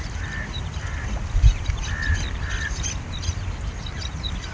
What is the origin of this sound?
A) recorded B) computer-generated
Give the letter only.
A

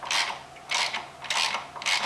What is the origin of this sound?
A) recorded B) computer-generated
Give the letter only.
A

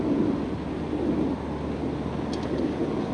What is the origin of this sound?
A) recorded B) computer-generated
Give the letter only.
A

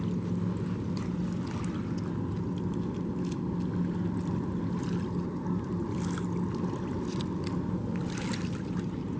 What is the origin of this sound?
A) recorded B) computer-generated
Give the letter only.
A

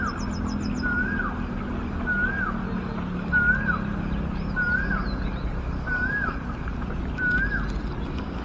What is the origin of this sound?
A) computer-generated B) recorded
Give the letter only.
B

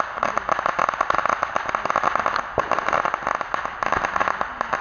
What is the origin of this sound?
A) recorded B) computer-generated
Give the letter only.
A